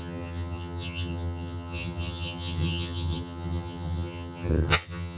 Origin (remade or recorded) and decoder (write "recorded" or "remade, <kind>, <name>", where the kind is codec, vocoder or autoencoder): remade, vocoder, HiFi-GAN